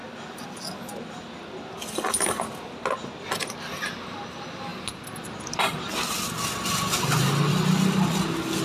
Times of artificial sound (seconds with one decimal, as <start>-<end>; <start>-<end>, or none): none